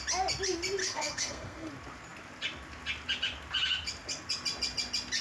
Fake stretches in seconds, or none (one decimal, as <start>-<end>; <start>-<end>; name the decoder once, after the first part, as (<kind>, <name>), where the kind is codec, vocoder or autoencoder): 0.8-1.7 (codec, SNAC)